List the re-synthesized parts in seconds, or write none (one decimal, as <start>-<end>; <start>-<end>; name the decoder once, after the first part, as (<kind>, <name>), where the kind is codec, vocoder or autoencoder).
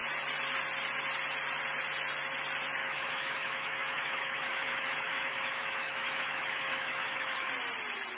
2.8-7.5 (autoencoder, DAC-VAE)